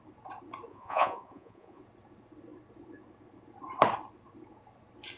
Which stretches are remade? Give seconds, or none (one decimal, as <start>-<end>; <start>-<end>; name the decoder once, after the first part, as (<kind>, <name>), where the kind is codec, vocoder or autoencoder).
0.7-1.8 (vocoder, Vocos)